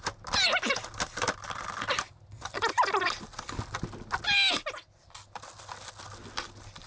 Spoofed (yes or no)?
no